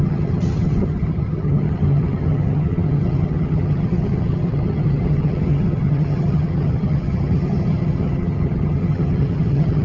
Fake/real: fake